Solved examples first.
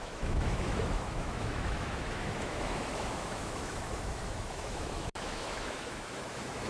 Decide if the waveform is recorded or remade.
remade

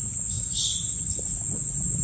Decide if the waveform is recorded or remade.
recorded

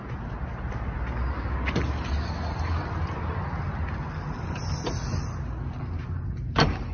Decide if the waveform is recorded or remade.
recorded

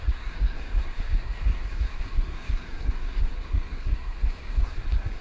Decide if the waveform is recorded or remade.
remade